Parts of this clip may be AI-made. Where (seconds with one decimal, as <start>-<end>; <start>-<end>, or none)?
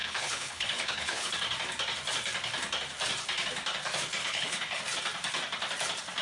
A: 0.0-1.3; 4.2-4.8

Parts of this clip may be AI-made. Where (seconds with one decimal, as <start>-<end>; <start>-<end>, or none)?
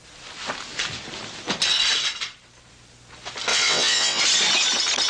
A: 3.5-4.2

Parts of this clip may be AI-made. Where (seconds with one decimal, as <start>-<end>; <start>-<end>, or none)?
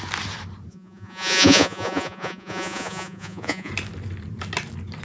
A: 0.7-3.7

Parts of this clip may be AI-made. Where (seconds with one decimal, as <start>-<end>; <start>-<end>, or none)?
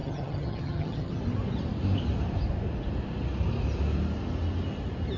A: 0.0-1.2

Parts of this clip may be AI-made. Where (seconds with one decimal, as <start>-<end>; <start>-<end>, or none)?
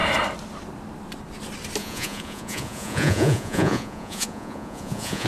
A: 1.8-5.3